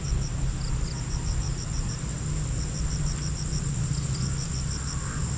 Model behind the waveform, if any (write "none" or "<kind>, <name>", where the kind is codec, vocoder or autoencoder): none